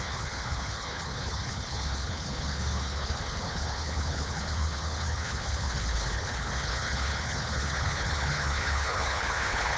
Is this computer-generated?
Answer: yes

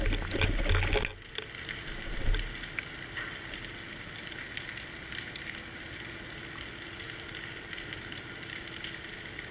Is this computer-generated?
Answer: no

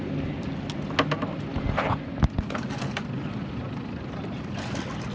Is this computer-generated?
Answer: no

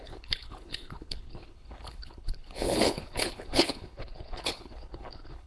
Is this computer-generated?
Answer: yes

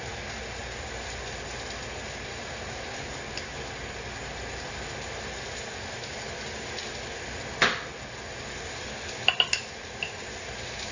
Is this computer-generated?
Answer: no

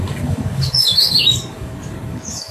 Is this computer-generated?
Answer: yes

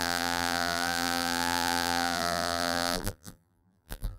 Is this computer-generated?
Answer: yes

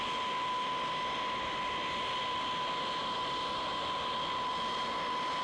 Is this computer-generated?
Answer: no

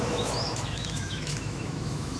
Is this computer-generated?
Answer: yes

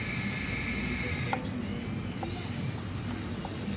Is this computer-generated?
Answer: yes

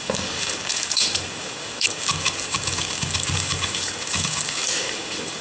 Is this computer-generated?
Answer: yes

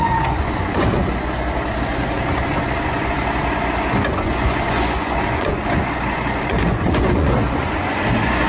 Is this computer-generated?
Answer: yes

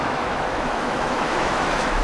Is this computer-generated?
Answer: yes